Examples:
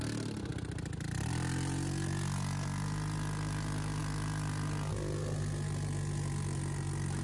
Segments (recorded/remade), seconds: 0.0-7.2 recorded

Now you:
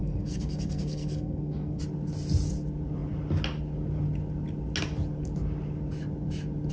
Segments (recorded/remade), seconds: 0.0-1.8 remade; 1.8-6.7 recorded

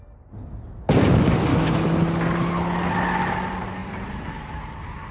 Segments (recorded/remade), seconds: 0.0-1.5 recorded; 1.5-2.0 remade; 2.0-5.1 recorded

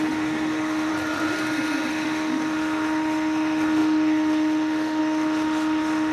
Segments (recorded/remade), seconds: 0.0-0.9 remade; 0.9-1.9 recorded; 1.9-6.1 remade

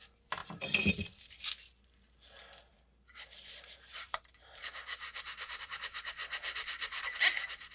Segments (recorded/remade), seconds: 0.0-2.7 recorded; 2.7-5.7 remade; 5.7-7.7 recorded